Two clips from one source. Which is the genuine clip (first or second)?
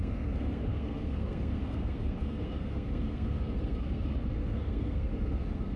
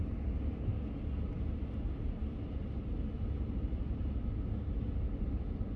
second